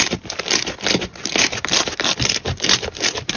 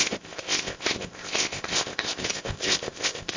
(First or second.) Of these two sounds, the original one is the first